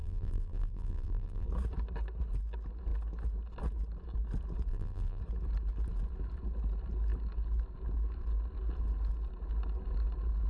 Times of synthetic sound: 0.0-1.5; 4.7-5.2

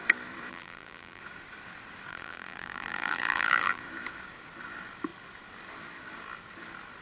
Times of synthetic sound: 0.5-1.2; 2.1-3.8

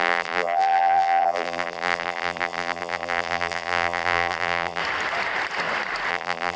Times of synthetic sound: 0.0-4.8; 6.1-6.6

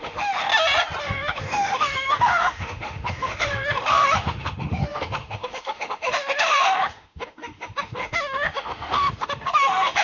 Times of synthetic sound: 0.0-0.5; 1.0-10.0